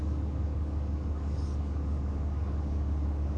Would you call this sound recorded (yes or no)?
no